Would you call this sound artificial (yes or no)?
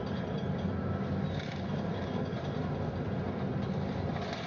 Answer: no